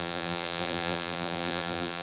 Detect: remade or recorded remade